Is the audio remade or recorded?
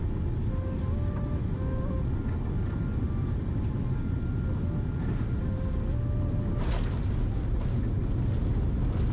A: recorded